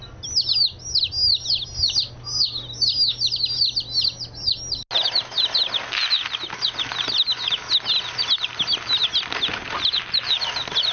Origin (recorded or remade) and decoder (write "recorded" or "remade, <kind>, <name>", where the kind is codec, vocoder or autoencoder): recorded